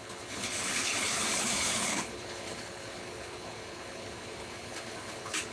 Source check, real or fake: fake